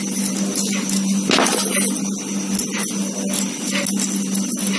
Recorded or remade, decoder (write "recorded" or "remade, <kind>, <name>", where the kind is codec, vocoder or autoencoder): recorded